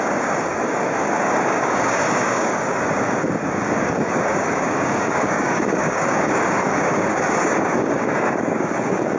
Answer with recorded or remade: remade